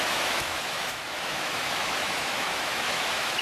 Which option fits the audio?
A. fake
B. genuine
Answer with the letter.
A